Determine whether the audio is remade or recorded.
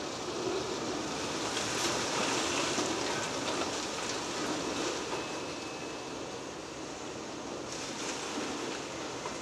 recorded